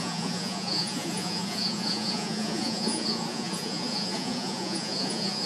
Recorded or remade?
remade